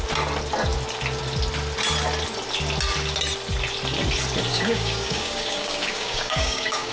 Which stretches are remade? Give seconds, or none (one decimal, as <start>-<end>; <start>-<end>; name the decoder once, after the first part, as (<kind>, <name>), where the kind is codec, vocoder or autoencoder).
4.5-6.9 (codec, DAC)